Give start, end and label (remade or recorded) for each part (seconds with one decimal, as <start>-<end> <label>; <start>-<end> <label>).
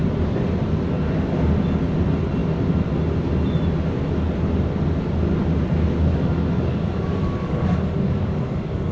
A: 0.0-6.1 recorded; 6.1-8.9 remade